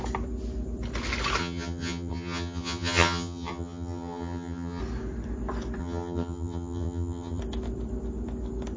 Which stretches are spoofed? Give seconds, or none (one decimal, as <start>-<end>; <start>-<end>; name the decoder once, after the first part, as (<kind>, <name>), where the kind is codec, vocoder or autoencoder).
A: 1.4-4.8 (vocoder, HiFi-GAN); 5.8-7.4